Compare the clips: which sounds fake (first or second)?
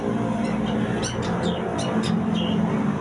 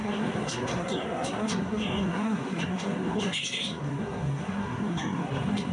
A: second